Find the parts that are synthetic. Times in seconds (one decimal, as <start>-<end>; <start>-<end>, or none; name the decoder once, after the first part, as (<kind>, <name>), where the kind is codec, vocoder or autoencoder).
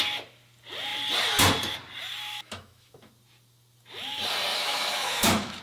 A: 2.3-3.1 (autoencoder, DAC-VAE); 4.5-5.6